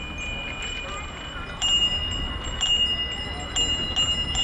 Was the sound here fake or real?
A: real